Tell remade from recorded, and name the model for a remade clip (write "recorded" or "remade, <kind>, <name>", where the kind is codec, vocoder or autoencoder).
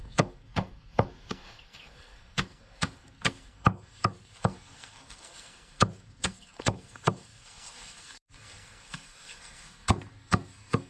remade, codec, SNAC